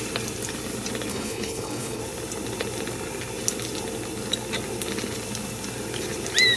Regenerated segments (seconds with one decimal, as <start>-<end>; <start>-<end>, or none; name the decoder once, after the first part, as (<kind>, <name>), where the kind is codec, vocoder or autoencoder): 1.1-2.0 (codec, HILCodec)